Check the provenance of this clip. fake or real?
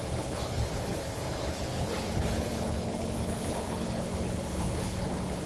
fake